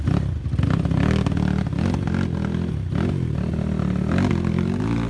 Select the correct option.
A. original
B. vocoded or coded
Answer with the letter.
A